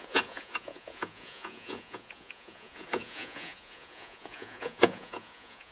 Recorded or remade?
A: remade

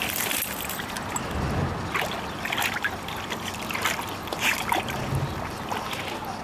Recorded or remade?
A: recorded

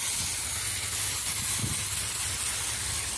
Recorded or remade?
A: recorded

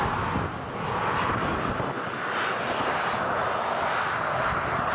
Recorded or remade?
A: recorded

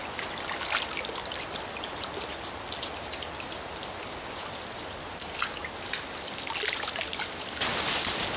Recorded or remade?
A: recorded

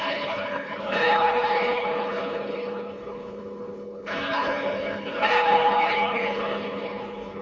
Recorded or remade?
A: remade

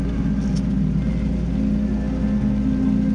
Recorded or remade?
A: recorded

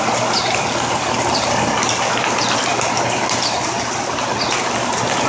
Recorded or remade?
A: recorded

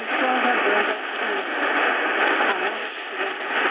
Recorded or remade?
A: recorded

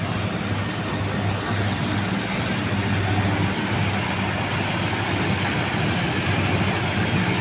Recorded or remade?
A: recorded